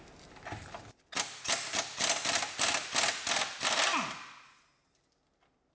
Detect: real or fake real